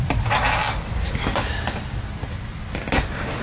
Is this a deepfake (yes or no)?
no